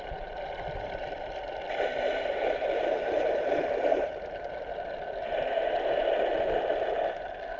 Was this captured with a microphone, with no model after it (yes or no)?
yes